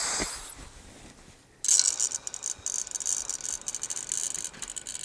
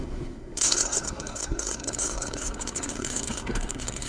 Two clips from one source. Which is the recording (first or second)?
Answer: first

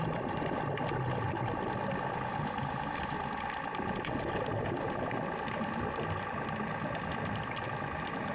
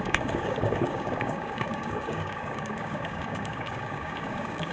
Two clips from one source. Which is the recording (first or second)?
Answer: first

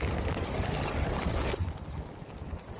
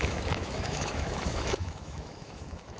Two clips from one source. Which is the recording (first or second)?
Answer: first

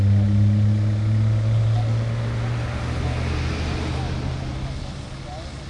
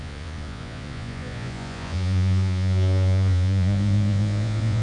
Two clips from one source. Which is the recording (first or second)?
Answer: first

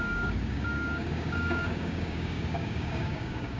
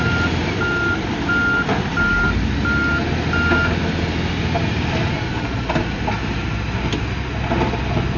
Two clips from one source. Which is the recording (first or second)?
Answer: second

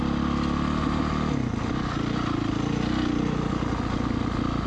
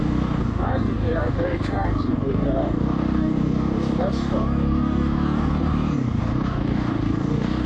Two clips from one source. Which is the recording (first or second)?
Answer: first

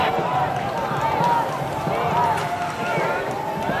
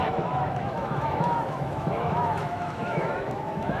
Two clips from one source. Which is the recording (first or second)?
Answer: first